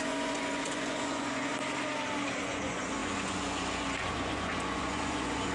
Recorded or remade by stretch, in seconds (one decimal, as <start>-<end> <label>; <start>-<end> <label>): 0.0-1.5 remade; 1.5-2.4 recorded; 2.4-5.5 remade